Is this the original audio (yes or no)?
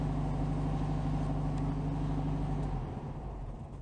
yes